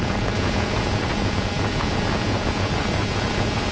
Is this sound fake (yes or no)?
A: yes